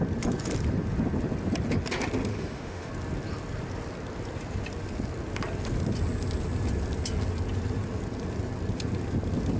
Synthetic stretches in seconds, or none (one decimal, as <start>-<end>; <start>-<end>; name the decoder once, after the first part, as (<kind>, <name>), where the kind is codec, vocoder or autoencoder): 2.3-2.9 (autoencoder, DAC-VAE)